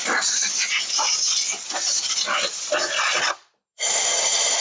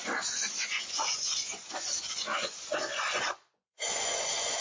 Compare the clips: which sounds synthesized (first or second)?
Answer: second